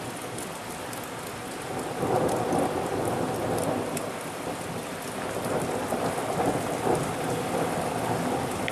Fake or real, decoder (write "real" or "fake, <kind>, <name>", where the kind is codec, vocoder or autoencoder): real